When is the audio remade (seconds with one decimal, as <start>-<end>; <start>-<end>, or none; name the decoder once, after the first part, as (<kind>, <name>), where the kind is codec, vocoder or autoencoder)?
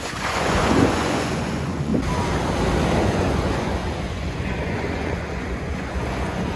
0.0-1.9 (vocoder, Vocos); 3.0-6.6